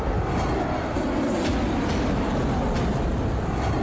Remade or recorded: recorded